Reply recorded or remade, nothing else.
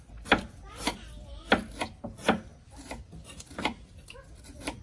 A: recorded